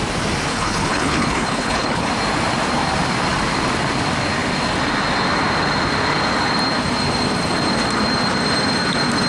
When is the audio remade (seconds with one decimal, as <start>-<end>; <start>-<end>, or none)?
0.5-2.1